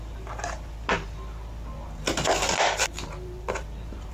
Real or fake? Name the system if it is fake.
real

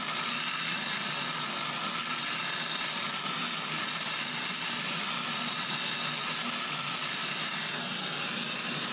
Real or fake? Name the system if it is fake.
real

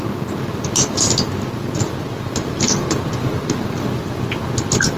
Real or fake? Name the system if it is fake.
real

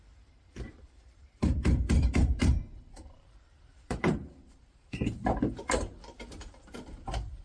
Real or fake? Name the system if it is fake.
fake, vocoder, BigVGAN v2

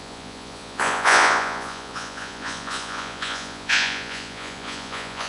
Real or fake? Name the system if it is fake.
fake, vocoder, Vocos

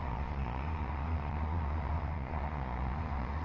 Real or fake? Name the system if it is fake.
fake, vocoder, Vocos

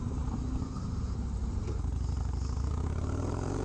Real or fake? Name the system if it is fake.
fake, vocoder, BigVGAN v2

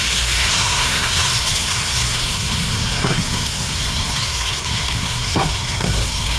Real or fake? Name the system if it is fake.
fake, codec, SNAC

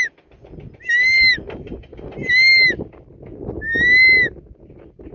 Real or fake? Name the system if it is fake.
real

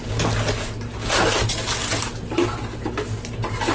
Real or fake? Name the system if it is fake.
real